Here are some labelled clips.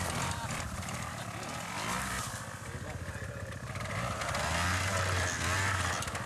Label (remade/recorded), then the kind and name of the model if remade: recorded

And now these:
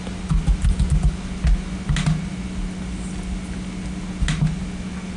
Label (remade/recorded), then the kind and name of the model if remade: recorded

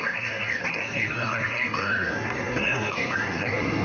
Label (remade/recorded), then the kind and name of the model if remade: remade, codec, SNAC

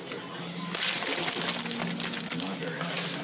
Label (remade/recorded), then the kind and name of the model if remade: recorded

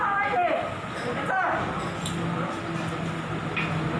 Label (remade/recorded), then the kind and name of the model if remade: recorded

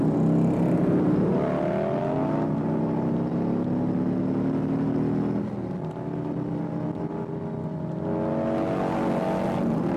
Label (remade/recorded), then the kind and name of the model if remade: recorded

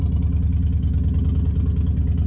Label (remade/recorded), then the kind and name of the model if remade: recorded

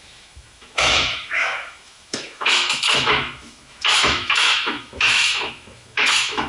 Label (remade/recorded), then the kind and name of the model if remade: remade, autoencoder, DAC-VAE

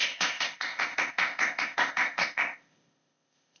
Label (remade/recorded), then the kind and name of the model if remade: remade, codec, ZipCodec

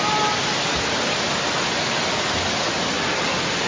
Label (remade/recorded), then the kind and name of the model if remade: recorded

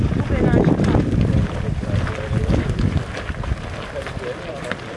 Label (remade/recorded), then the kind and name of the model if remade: recorded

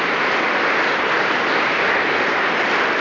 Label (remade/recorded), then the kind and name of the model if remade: recorded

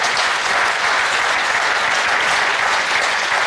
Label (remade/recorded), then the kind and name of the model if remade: remade, vocoder, Vocos